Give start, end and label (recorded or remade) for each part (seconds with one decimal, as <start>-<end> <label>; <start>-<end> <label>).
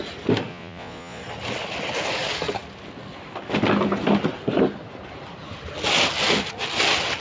0.0-0.5 recorded; 0.5-1.2 remade; 1.2-7.2 recorded